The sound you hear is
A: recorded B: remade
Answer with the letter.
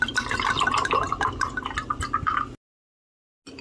A